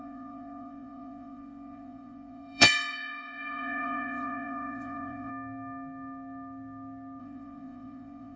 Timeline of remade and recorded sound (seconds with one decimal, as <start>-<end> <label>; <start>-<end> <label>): 0.0-5.3 remade; 5.3-7.2 recorded; 7.2-8.4 remade